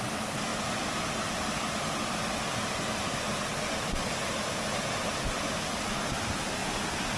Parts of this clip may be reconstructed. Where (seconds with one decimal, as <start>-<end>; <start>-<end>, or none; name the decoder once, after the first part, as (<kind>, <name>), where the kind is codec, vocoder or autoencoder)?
none